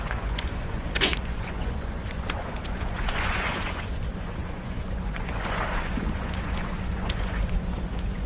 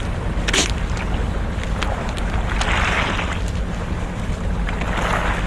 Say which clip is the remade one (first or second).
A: first